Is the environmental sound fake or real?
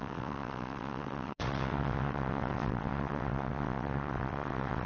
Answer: fake